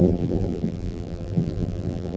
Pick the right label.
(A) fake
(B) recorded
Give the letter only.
A